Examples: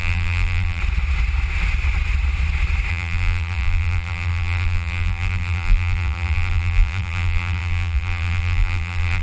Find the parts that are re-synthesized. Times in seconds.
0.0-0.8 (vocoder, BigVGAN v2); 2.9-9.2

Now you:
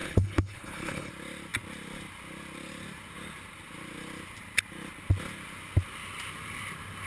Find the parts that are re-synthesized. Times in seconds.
0.0-1.1 (codec, HILCodec)

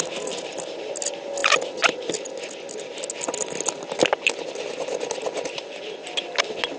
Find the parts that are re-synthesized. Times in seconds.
none

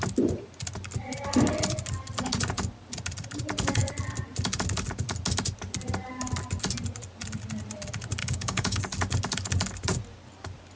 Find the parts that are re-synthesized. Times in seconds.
8.2-8.8 (codec, DAC)

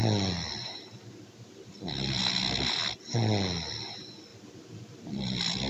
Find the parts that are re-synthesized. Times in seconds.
none